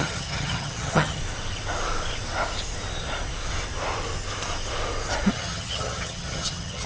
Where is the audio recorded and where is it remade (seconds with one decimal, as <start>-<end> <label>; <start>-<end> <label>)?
0.0-1.2 remade; 1.2-5.3 recorded; 5.3-6.9 remade

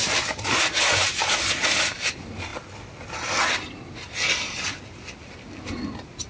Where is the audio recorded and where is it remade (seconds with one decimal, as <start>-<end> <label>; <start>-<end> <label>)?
0.0-6.3 recorded

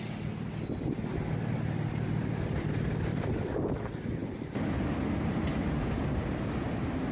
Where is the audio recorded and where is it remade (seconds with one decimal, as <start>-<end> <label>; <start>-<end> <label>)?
0.0-7.1 recorded

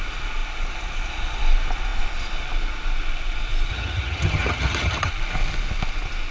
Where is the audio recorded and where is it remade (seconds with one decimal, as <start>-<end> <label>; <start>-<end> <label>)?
0.0-3.7 recorded; 3.7-5.1 remade; 5.1-6.3 recorded

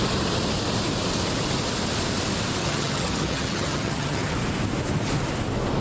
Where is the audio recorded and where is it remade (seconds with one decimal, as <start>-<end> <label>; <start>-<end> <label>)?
0.0-2.6 recorded; 2.6-4.3 remade; 4.3-5.8 recorded

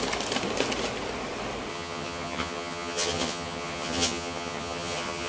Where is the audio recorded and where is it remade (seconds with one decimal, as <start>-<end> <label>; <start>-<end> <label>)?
0.0-1.7 recorded; 1.7-5.3 remade

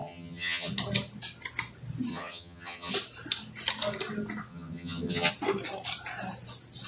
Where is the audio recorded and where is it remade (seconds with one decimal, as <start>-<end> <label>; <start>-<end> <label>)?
0.0-0.7 remade; 0.7-2.1 recorded; 2.1-2.9 remade; 2.9-4.5 recorded; 4.5-5.3 remade; 5.3-6.9 recorded